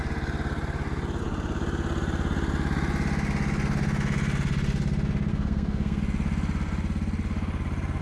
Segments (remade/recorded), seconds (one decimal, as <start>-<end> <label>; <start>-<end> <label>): 0.0-5.3 recorded; 5.3-6.0 remade; 6.0-8.0 recorded